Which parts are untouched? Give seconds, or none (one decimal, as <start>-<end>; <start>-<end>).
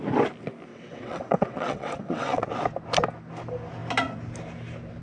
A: 0.0-0.7; 2.5-5.0